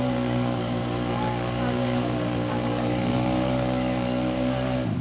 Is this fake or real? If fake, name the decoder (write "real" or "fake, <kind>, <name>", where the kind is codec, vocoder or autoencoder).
fake, codec, DAC